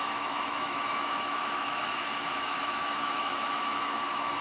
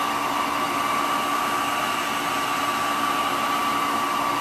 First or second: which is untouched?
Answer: second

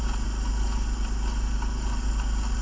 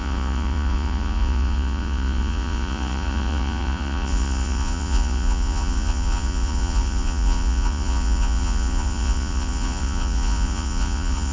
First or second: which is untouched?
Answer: first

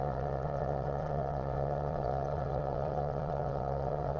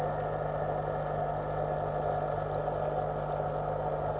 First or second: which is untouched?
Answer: second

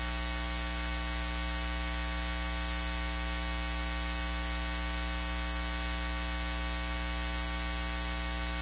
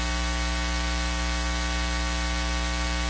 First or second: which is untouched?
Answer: first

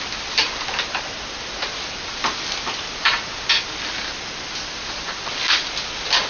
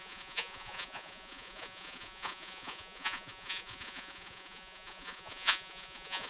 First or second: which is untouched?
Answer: first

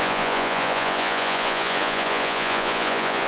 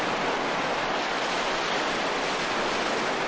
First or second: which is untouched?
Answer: second